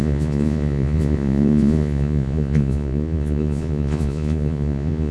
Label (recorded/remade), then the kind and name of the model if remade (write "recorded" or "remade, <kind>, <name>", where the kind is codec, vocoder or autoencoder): remade, vocoder, Vocos